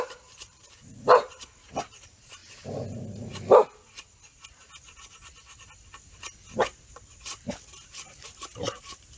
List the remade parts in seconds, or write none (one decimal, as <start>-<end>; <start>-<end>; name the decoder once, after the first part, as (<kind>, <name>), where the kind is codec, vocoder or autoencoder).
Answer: 0.0-2.4 (vocoder, BigVGAN v2); 6.9-9.2